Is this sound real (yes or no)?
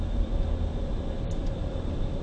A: yes